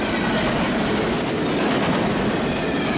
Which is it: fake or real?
real